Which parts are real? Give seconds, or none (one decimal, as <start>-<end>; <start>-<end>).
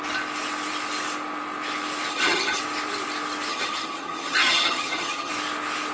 0.0-2.1; 2.6-3.5; 5.3-5.9